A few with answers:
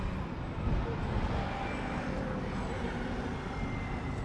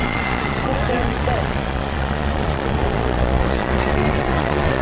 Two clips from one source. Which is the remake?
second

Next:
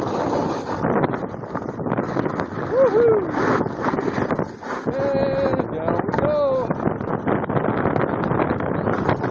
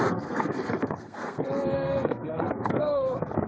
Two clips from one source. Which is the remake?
second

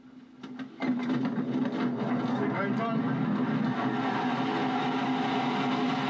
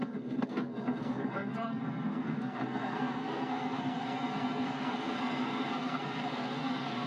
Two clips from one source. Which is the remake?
second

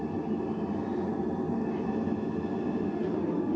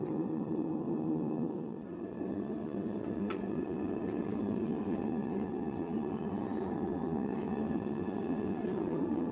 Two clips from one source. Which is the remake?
second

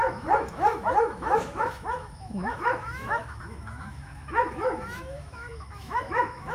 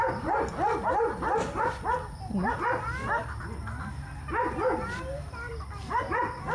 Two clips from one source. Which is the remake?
first